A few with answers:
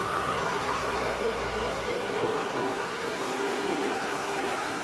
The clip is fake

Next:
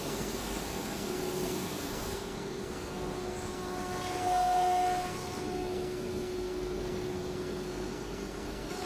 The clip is fake